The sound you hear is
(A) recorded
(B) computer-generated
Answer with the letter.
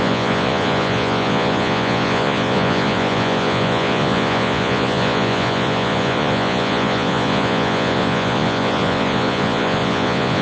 B